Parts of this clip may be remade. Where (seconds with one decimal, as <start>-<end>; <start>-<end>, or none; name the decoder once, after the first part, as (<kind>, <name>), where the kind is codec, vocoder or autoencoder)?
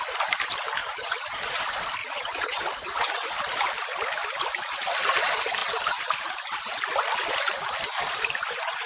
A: 0.8-1.6 (vocoder, Vocos); 2.0-3.1